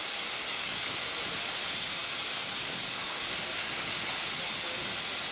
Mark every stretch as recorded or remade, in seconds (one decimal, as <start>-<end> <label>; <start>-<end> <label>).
0.0-0.5 recorded; 0.5-1.1 remade; 1.1-2.0 recorded; 2.0-4.0 remade; 4.0-5.3 recorded